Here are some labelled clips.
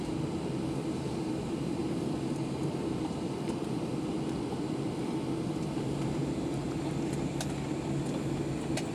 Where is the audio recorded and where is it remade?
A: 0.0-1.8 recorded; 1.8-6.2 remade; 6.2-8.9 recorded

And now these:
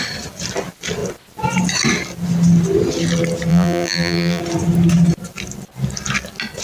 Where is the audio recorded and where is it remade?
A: 0.0-3.5 recorded; 3.5-4.4 remade; 4.4-6.6 recorded

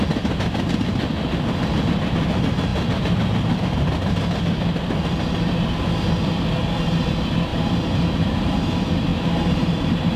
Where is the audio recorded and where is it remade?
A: 0.0-7.5 recorded; 7.5-8.7 remade; 8.7-9.1 recorded; 9.1-10.2 remade

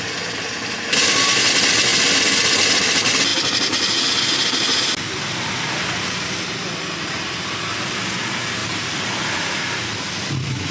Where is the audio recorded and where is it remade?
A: 0.0-8.6 recorded; 8.6-9.6 remade; 9.6-10.7 recorded

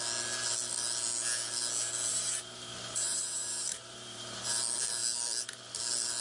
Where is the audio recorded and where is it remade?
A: 0.0-2.1 recorded; 2.1-4.4 remade; 4.4-6.2 recorded

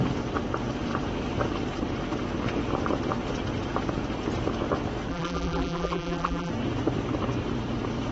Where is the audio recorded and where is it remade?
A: 0.0-5.1 recorded; 5.1-6.5 remade; 6.5-8.1 recorded

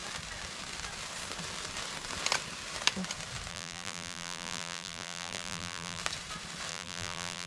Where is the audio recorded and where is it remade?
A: 0.0-3.5 recorded; 3.5-6.0 remade; 6.0-6.7 recorded; 6.7-7.5 remade

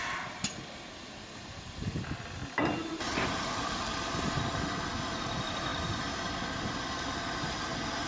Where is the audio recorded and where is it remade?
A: 0.0-8.1 recorded